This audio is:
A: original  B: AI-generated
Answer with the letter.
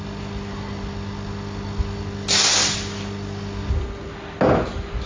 A